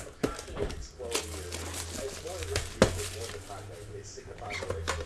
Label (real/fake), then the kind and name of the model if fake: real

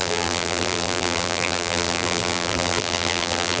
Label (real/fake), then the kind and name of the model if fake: fake, vocoder, BigVGAN v2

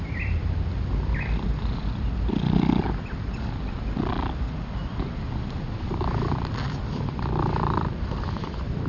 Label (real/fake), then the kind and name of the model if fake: fake, vocoder, BigVGAN v2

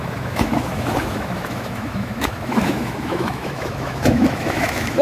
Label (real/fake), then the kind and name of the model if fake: fake, autoencoder, DAC-VAE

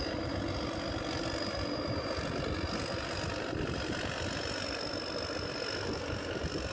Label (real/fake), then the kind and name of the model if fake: real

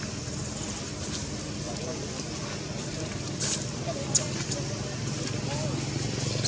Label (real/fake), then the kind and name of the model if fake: real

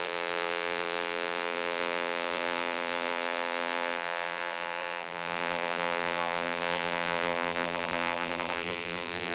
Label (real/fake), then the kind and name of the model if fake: fake, vocoder, BigVGAN v2